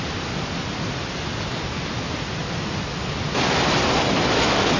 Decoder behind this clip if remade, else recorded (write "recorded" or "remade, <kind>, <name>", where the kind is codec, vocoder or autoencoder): recorded